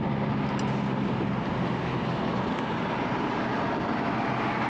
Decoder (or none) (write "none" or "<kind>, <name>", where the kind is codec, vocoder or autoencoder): none